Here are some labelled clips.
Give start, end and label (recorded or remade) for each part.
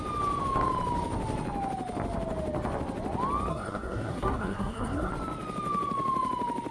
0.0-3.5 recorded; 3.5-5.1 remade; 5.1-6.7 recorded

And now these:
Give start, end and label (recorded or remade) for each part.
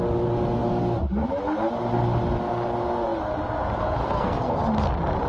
0.0-4.0 recorded; 4.0-4.6 remade; 4.6-5.3 recorded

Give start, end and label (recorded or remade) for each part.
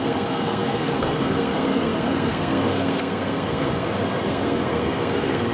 0.0-5.5 remade